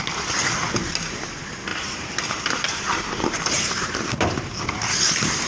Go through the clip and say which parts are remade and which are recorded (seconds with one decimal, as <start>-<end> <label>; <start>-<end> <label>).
0.0-1.7 recorded; 1.7-5.0 remade; 5.0-5.5 recorded